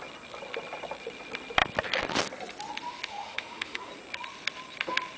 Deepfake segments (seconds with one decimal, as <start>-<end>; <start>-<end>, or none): 3.1-3.9